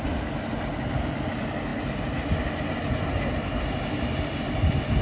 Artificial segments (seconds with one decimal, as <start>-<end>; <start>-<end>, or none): none

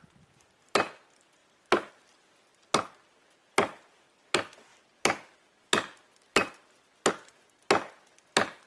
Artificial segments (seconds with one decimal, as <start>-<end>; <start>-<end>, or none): none

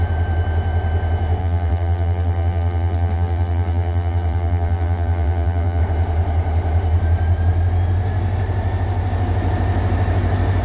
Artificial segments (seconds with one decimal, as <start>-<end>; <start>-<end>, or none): 1.4-5.8

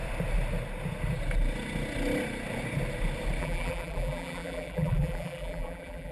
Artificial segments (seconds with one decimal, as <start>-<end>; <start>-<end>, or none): 3.4-6.1

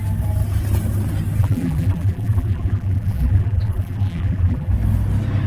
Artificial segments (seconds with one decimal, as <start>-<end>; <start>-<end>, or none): 1.4-4.7